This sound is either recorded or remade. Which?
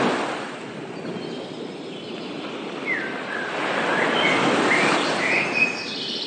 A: recorded